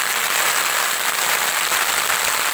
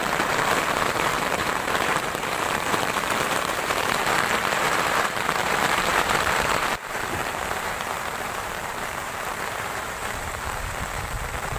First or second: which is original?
first